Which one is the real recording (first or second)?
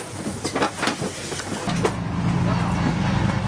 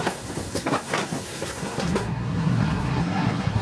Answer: first